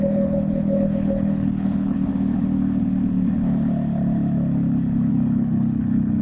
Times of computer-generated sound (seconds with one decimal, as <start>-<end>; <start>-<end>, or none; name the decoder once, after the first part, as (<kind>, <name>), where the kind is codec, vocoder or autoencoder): 0.0-2.1 (codec, HILCodec); 5.1-6.2